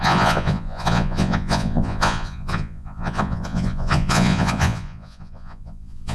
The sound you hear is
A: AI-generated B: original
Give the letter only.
A